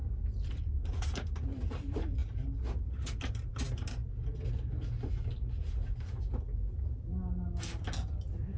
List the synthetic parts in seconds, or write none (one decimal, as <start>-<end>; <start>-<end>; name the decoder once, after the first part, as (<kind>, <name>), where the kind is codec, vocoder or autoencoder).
0.6-2.2 (vocoder, BigVGAN v2); 2.8-4.0